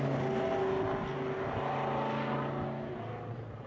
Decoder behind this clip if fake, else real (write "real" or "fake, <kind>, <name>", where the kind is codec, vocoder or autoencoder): real